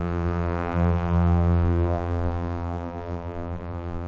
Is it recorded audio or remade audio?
remade